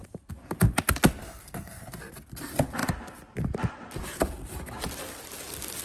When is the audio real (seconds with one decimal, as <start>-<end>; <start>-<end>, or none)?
0.0-1.2; 1.8-5.8